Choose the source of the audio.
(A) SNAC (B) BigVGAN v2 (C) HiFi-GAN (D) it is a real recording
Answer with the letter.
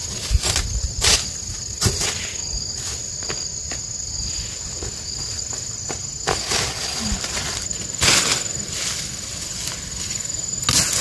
D